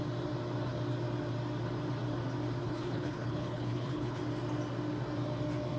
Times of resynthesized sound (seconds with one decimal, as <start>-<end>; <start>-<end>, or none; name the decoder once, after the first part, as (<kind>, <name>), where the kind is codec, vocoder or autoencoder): 2.6-4.2 (codec, HILCodec)